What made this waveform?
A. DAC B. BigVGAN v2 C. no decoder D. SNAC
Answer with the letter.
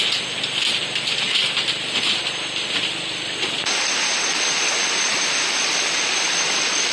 C